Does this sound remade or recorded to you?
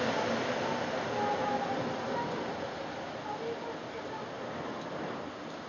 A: recorded